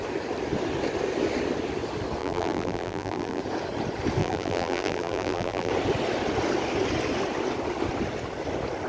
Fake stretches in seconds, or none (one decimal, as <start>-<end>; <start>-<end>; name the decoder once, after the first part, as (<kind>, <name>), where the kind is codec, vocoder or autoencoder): 2.2-3.4 (vocoder, BigVGAN v2); 4.2-5.7